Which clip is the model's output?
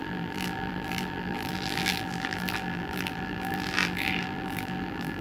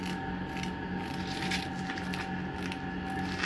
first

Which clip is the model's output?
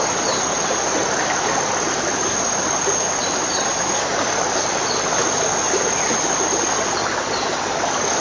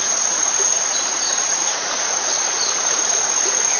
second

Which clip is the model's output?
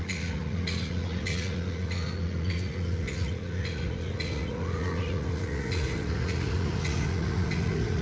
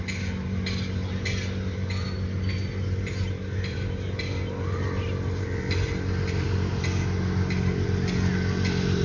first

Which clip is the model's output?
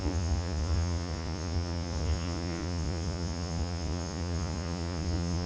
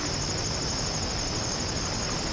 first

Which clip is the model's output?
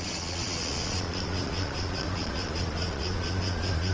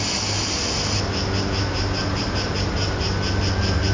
first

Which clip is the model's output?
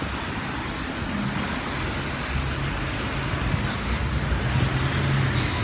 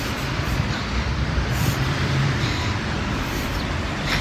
second